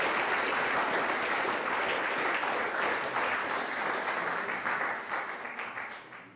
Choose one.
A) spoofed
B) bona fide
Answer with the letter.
B